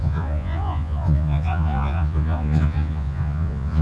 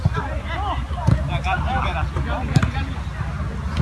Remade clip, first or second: first